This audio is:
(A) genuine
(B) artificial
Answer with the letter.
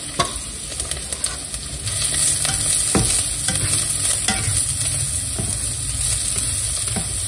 A